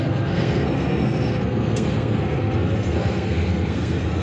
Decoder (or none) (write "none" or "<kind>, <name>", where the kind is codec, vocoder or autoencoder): codec, SNAC